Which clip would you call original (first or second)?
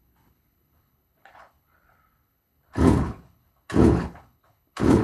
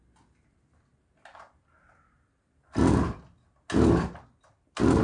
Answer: second